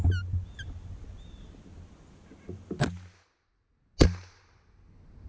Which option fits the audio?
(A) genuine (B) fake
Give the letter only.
A